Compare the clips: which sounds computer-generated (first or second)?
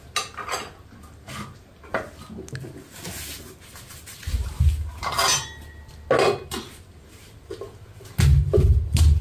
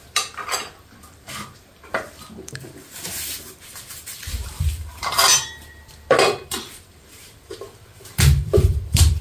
second